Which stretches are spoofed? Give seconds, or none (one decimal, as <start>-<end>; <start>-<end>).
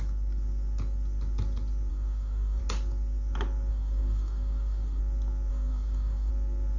1.9-2.6; 3.7-5.0; 5.5-6.3